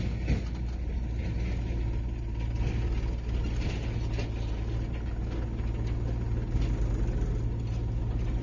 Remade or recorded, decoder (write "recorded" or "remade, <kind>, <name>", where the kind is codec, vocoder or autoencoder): recorded